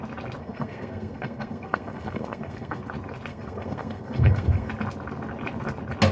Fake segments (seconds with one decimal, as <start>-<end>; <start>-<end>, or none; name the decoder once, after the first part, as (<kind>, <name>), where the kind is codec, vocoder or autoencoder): 0.4-2.8 (codec, SNAC); 3.3-4.7